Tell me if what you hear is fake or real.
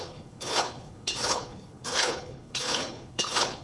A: fake